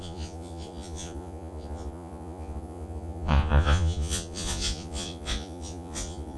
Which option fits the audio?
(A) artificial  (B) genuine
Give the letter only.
A